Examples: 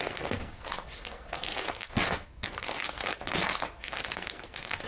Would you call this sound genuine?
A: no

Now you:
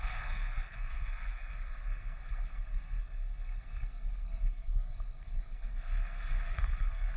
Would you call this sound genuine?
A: no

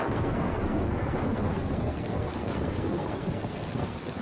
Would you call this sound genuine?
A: no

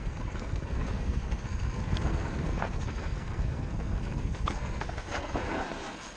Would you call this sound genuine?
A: no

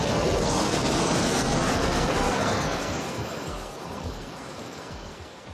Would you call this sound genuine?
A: no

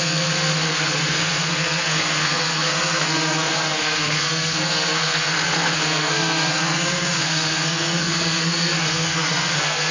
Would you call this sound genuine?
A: no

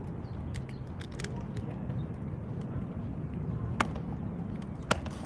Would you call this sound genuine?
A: yes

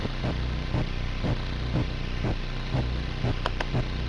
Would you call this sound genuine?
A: yes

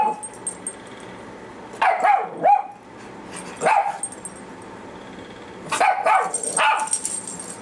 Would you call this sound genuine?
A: yes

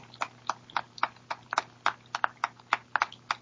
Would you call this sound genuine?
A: yes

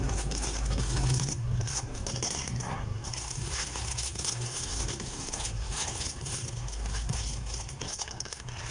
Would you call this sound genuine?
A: no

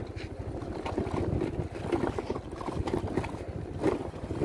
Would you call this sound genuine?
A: yes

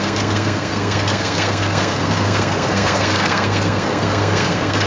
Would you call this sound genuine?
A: no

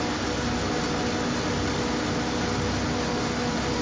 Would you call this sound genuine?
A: yes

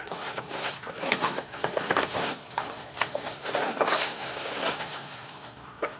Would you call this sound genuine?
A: no